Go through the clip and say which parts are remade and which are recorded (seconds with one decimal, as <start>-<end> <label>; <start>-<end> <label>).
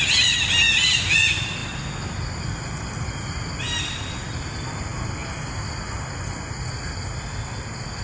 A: 0.0-8.0 recorded